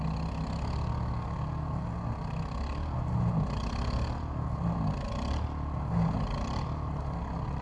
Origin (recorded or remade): recorded